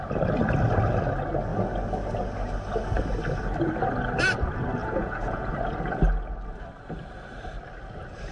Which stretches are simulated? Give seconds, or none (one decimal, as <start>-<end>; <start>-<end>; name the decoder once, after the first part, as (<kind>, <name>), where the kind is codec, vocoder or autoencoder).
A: 4.8-5.5 (vocoder, Vocos)